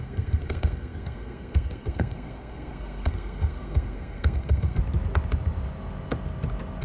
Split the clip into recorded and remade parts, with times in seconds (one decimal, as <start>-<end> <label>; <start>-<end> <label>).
0.0-4.8 remade; 4.8-6.8 recorded